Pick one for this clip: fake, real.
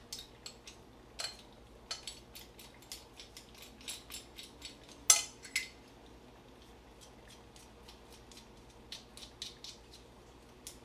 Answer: real